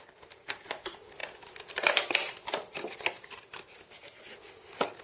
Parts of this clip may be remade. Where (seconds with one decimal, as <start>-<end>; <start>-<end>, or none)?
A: none